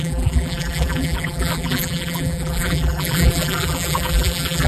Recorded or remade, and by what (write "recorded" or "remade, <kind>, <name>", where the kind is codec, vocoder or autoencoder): remade, vocoder, BigVGAN v2